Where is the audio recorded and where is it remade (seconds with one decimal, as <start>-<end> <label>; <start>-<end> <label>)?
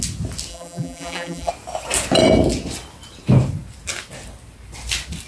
0.0-0.5 recorded; 0.5-1.5 remade; 1.5-5.3 recorded